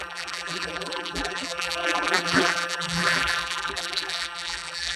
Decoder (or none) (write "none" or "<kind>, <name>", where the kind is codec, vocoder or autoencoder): vocoder, BigVGAN v2